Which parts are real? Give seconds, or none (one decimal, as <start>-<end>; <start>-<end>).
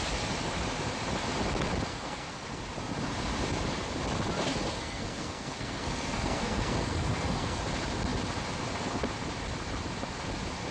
0.0-1.9; 2.6-4.8; 7.6-10.7